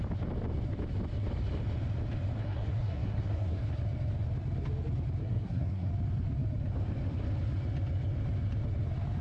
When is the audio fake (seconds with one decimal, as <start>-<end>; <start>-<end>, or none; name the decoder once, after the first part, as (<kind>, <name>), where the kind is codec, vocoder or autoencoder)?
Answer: 2.4-3.6 (codec, SNAC); 5.2-5.9